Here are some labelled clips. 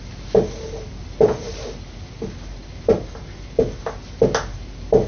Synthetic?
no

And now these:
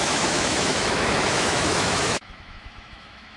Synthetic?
yes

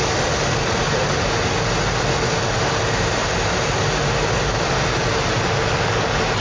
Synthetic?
no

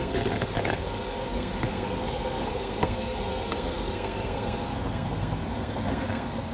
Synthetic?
yes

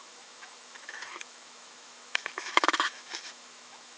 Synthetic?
yes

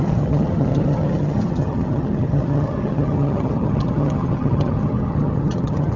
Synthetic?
yes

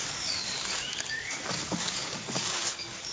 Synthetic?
yes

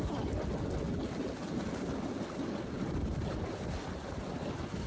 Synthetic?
no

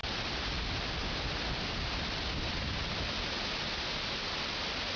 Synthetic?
no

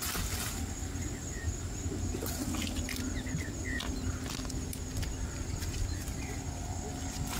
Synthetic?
no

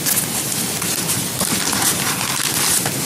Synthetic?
no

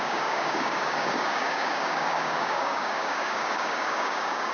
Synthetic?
yes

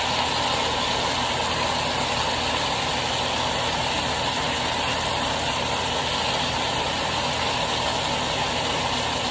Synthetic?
no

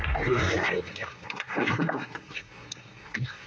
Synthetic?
yes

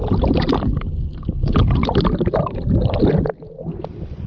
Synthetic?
no